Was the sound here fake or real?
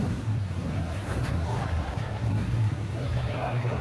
fake